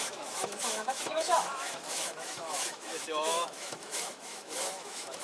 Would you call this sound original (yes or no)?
no